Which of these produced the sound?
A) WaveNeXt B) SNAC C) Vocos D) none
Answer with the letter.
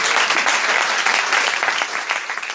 D